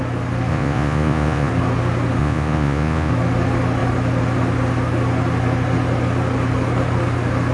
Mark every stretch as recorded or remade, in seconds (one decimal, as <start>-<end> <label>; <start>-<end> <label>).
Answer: 0.0-0.5 recorded; 0.5-1.5 remade; 1.5-2.2 recorded; 2.2-3.1 remade; 3.1-7.5 recorded

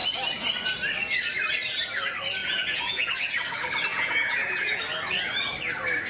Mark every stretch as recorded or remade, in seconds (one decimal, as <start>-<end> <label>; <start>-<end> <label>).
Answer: 0.0-2.4 recorded; 2.4-3.1 remade; 3.1-3.9 recorded; 3.9-4.8 remade; 4.8-6.1 recorded

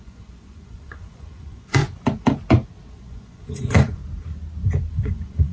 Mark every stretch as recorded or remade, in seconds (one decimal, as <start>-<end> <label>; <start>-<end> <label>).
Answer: 0.0-1.8 remade; 1.8-2.9 recorded; 2.9-4.0 remade; 4.0-4.9 recorded; 4.9-5.5 remade

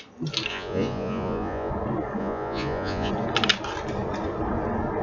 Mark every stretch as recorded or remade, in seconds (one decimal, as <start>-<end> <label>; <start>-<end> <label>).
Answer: 0.0-0.5 recorded; 0.5-1.7 remade; 1.7-2.2 recorded; 2.2-3.1 remade; 3.1-5.0 recorded

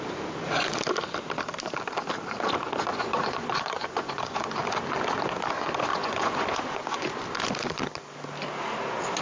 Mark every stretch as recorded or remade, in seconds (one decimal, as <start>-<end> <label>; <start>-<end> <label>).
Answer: 0.0-2.9 recorded; 2.9-4.6 remade; 4.6-5.9 recorded; 5.9-7.1 remade; 7.1-9.2 recorded

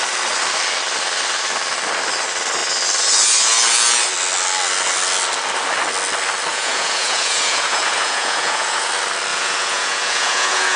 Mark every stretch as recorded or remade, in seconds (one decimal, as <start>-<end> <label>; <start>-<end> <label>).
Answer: 0.0-6.5 recorded; 6.5-8.9 remade; 8.9-9.3 recorded; 9.3-10.8 remade

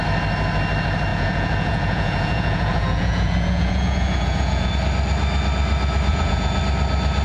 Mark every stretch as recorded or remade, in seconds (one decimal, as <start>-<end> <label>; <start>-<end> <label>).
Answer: 0.0-1.1 recorded; 1.1-4.7 remade; 4.7-6.1 recorded; 6.1-6.6 remade; 6.6-7.2 recorded